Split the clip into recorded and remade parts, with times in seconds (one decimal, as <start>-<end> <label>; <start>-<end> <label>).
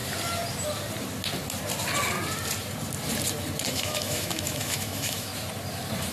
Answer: 0.0-3.7 recorded; 3.7-5.3 remade; 5.3-6.1 recorded